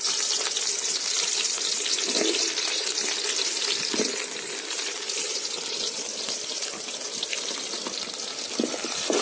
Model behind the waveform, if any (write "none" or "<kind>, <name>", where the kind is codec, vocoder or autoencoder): vocoder, BigVGAN v2